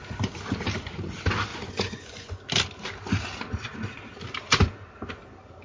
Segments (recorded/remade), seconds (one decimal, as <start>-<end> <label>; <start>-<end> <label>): 0.0-1.5 recorded; 1.5-2.4 remade; 2.4-5.6 recorded